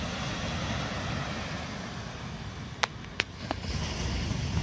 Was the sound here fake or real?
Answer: real